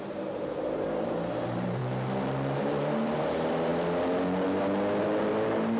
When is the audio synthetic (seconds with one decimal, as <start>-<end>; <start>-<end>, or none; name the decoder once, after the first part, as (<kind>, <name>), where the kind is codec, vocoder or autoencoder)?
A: 0.0-1.8 (vocoder, BigVGAN v2); 2.6-3.7; 5.0-5.8